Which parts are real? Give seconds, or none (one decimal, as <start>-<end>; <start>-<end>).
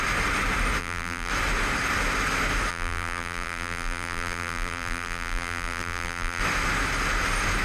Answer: 0.0-0.8; 1.3-2.7; 6.4-7.6